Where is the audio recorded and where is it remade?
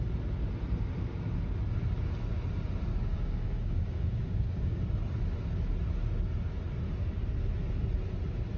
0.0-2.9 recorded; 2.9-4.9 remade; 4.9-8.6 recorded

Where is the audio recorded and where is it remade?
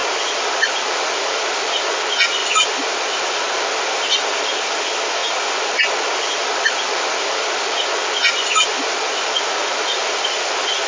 0.0-10.9 recorded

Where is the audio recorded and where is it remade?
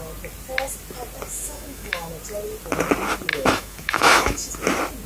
0.0-1.3 recorded; 1.3-2.1 remade; 2.1-3.3 recorded; 3.3-4.5 remade; 4.5-5.1 recorded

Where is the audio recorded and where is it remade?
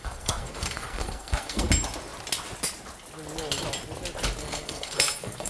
0.0-1.7 remade; 1.7-4.4 recorded; 4.4-5.5 remade